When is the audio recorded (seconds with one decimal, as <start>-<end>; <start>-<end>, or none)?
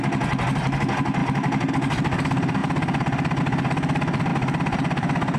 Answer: 0.0-5.4